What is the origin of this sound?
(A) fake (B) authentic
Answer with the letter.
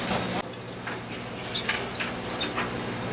B